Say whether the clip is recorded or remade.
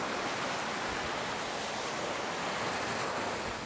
recorded